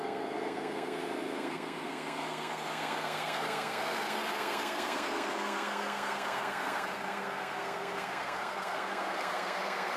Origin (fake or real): fake